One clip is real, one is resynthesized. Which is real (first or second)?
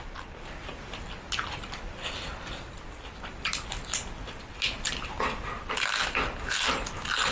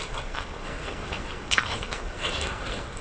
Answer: first